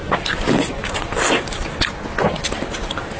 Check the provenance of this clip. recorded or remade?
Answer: recorded